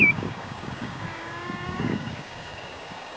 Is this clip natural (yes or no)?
no